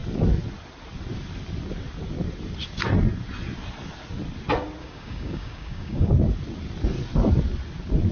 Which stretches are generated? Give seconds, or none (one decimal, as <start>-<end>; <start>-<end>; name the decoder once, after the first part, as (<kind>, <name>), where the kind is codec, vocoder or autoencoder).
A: 4.8-6.1 (codec, DAC)